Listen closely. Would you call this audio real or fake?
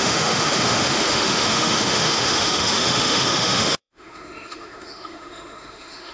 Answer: fake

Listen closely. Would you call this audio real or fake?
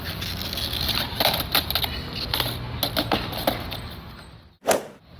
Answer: real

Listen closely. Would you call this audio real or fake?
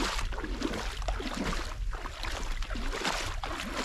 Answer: real